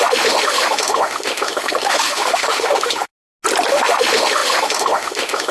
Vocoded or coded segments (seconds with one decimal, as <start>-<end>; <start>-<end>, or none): 0.0-3.1; 3.7-5.5